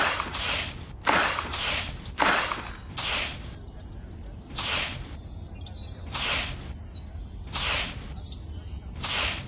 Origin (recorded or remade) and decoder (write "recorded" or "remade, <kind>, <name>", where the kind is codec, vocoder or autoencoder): recorded